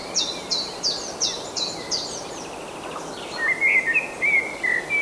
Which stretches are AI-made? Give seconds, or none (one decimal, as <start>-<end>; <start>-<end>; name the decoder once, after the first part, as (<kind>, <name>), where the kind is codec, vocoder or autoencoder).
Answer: none

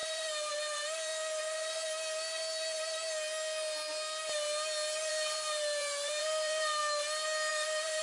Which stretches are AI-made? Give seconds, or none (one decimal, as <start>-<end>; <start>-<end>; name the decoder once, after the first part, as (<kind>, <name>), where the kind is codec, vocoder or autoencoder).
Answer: 0.0-1.1 (vocoder, BigVGAN v2); 5.1-6.8; 7.5-8.0